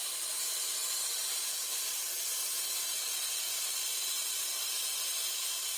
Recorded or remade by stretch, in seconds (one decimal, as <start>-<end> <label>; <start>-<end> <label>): 0.0-1.5 recorded; 1.5-2.3 remade; 2.3-5.3 recorded; 5.3-5.8 remade